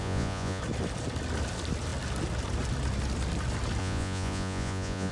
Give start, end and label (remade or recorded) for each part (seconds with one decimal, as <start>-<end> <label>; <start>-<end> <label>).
0.0-0.6 remade; 0.6-3.8 recorded; 3.8-5.1 remade